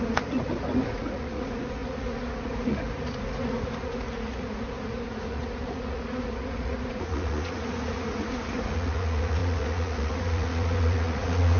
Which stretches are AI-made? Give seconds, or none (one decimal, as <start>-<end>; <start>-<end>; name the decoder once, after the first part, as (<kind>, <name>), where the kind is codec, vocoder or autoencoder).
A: 0.0-11.6 (vocoder, Vocos)